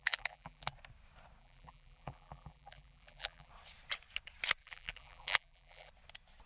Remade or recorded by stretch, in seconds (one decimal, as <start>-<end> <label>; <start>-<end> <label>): 0.0-0.7 remade; 0.7-1.4 recorded; 1.4-3.5 remade; 3.5-4.6 recorded; 4.6-5.9 remade; 5.9-6.5 recorded